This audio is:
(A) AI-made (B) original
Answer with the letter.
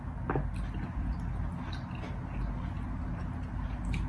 B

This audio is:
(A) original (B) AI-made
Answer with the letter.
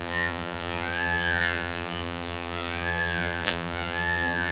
B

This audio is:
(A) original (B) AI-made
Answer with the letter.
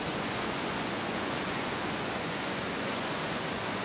B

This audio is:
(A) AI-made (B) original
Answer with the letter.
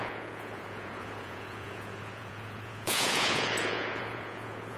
A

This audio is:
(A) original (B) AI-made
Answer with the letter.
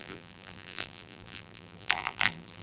B